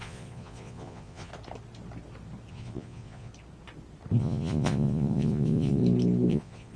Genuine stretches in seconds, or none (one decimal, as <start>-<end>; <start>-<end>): 1.3-2.5; 3.3-4.2; 5.8-6.3